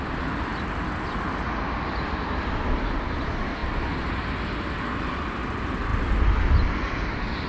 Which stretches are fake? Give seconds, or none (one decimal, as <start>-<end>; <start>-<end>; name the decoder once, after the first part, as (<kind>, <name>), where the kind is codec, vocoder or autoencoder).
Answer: none